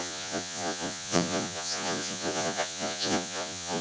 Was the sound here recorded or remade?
remade